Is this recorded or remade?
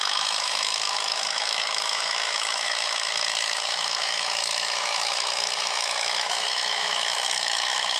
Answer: remade